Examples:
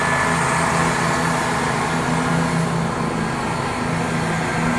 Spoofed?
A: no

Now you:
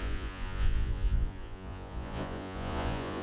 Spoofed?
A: yes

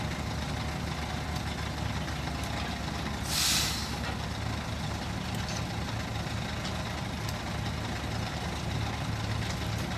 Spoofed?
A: no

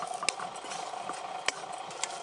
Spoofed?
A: no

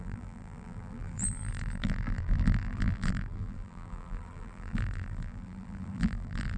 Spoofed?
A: yes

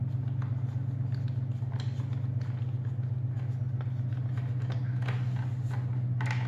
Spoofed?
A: no